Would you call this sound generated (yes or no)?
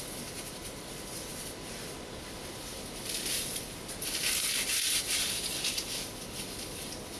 no